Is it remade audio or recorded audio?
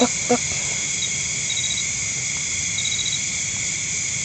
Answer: recorded